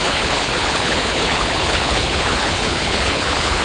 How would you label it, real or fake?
fake